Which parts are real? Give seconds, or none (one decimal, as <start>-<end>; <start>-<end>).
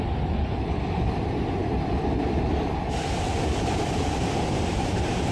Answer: 0.0-5.3